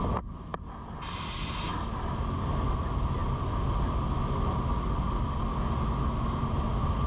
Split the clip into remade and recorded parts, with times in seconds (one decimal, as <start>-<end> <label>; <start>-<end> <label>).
0.0-7.1 recorded